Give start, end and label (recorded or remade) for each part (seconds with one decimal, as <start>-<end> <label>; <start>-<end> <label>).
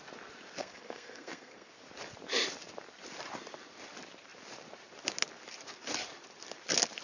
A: 0.0-0.6 recorded; 0.6-1.7 remade; 1.7-7.0 recorded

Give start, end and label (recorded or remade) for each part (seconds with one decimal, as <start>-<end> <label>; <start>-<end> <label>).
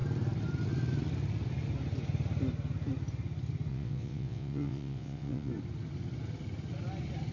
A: 0.0-3.7 recorded; 3.7-5.5 remade; 5.5-7.3 recorded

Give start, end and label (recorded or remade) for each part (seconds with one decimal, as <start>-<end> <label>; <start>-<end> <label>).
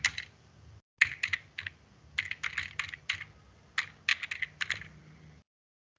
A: 0.0-6.0 recorded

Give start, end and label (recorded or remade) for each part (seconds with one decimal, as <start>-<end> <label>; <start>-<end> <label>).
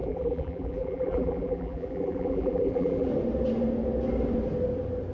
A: 0.0-3.1 remade; 3.1-5.1 recorded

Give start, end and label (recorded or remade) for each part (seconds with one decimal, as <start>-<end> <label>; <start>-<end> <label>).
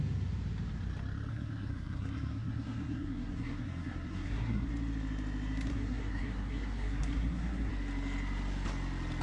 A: 0.0-1.3 recorded; 1.3-4.7 remade; 4.7-5.7 recorded; 5.7-7.7 remade; 7.7-9.2 recorded